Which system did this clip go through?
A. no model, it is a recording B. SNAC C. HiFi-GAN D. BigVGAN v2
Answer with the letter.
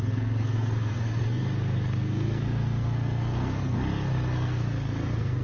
B